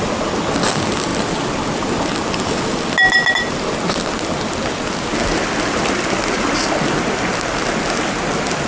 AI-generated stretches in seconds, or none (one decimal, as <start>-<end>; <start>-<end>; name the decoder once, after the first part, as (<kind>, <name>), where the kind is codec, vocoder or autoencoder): none